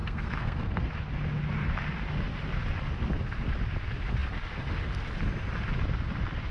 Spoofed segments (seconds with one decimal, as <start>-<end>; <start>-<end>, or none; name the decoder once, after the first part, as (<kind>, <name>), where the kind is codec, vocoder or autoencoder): 0.0-0.9 (codec, SNAC)